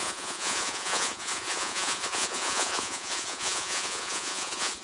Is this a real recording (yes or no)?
no